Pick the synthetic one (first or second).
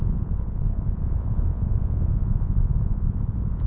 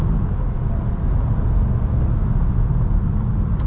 first